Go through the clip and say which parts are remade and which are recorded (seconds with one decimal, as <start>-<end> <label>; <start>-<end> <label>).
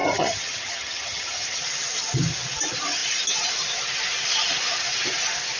0.0-1.6 remade; 1.6-5.6 recorded